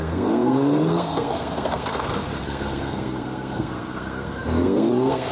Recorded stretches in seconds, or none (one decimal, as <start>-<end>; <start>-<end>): none